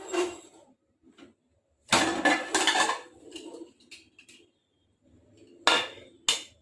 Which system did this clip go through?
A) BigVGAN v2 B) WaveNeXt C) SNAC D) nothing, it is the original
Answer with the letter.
D